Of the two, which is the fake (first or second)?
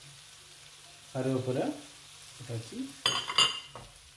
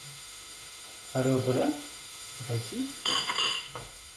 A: second